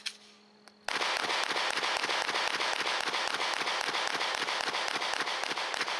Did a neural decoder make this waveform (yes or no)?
no